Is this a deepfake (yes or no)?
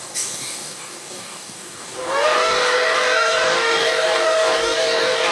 yes